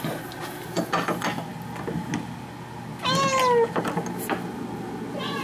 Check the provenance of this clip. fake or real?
real